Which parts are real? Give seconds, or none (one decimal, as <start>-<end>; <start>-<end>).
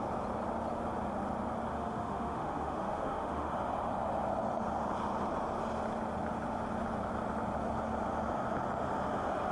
0.0-1.7; 3.5-9.5